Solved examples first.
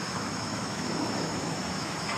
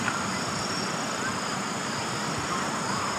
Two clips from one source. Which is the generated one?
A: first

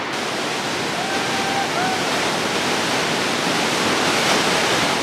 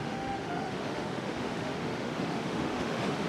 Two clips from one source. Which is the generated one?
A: second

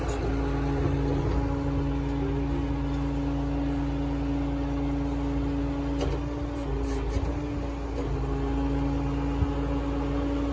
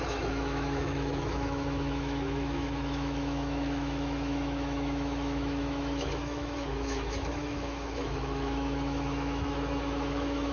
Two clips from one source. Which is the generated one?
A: second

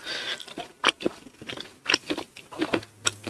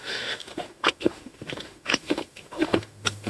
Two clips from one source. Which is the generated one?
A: second